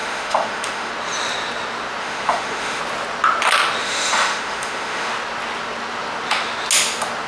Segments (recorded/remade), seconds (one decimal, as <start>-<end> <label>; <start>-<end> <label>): 0.0-0.9 remade; 0.9-2.0 recorded; 2.0-2.8 remade; 2.8-3.8 recorded; 3.8-5.1 remade; 5.1-7.3 recorded